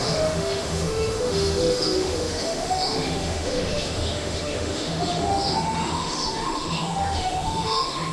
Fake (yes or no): yes